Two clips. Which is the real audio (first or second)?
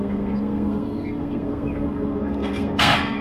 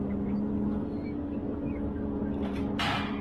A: second